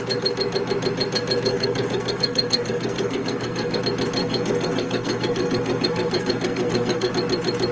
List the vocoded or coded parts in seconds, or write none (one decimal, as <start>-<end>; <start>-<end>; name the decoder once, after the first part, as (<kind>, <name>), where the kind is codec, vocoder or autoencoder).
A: 1.5-3.8 (codec, SNAC); 4.2-7.1